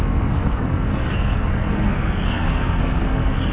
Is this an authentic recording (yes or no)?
no